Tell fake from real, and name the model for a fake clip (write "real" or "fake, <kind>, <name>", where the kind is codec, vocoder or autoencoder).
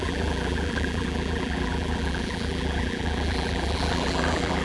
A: fake, vocoder, BigVGAN v2